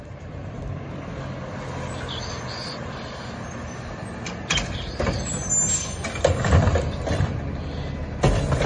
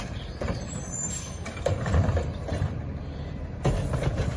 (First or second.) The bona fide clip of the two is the first